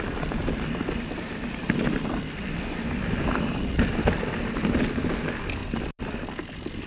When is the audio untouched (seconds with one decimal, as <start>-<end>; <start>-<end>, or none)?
0.0-0.4; 4.5-5.6